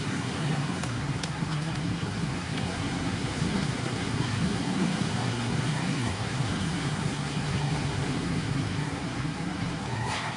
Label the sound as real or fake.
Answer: fake